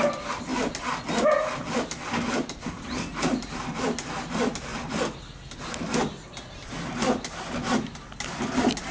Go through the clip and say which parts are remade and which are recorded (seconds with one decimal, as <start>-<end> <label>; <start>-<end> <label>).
0.0-8.9 recorded